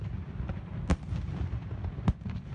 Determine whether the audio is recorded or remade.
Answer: recorded